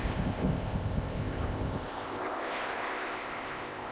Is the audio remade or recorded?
remade